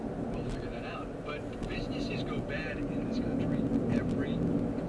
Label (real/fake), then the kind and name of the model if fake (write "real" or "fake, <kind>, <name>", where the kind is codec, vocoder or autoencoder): real